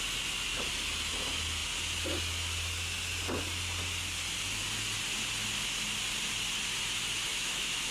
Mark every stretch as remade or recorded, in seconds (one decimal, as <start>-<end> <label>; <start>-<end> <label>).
0.0-7.3 recorded; 7.3-7.9 remade

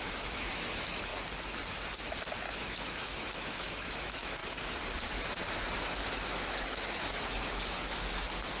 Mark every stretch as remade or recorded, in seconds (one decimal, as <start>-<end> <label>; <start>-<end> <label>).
0.0-1.1 remade; 1.1-2.4 recorded; 2.4-4.4 remade; 4.4-6.1 recorded; 6.1-8.6 remade

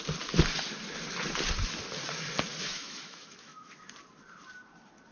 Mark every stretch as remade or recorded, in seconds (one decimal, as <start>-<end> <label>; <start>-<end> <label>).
0.0-2.5 recorded; 2.5-3.8 remade; 3.8-5.1 recorded